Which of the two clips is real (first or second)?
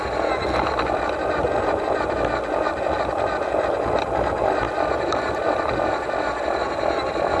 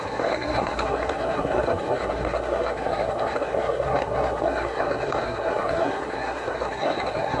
first